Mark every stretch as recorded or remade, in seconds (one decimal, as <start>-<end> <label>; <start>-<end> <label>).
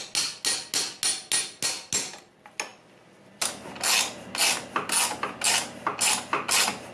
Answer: 0.0-6.9 recorded